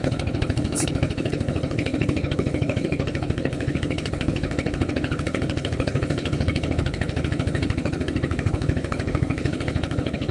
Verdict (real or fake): fake